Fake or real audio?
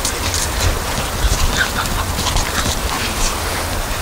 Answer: real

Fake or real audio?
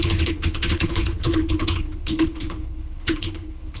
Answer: fake